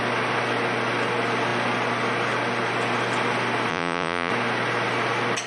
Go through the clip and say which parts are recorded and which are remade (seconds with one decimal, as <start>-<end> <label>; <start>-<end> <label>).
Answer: 0.0-3.7 recorded; 3.7-4.3 remade; 4.3-5.5 recorded